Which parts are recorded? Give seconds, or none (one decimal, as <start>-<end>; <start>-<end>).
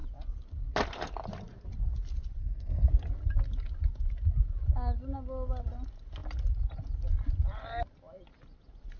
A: 0.0-2.4; 2.9-9.0